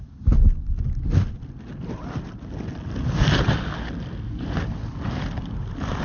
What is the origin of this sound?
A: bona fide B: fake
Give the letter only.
A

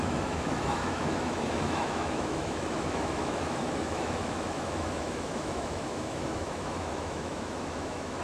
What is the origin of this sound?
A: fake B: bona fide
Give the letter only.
A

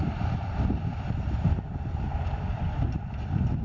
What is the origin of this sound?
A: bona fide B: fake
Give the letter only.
A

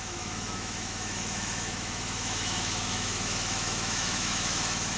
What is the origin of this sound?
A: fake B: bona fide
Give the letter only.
A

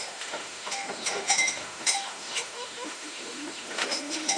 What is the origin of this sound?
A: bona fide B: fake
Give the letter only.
B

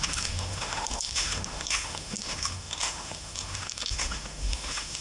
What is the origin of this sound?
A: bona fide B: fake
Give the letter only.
B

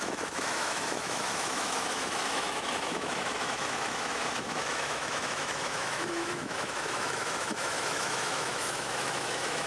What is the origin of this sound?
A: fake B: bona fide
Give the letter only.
A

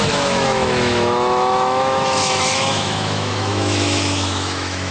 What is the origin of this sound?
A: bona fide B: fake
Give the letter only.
B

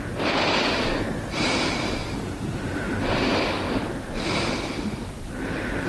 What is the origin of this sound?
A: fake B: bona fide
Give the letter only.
B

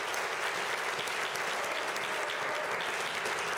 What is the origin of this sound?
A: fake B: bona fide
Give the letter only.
B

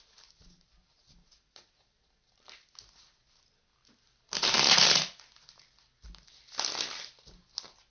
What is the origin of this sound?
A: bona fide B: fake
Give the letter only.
A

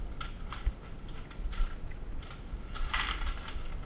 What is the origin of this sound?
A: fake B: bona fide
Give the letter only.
B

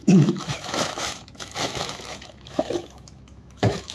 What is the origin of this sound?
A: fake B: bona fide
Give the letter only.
A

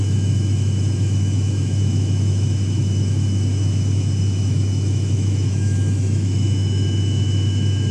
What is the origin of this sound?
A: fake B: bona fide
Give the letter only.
A